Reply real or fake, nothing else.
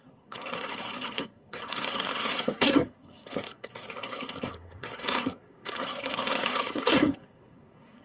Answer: fake